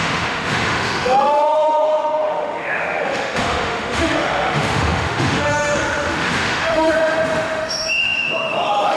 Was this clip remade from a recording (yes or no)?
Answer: yes